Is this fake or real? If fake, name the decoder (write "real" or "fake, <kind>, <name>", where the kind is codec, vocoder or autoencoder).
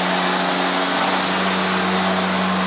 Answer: real